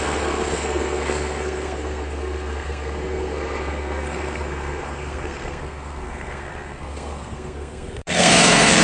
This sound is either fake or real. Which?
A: fake